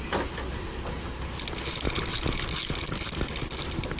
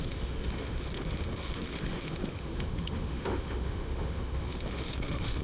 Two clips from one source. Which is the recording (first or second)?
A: first